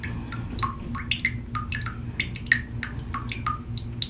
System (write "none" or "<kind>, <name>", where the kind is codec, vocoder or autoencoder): none